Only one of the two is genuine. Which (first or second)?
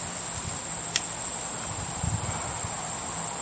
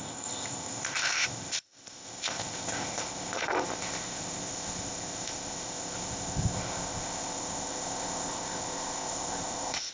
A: first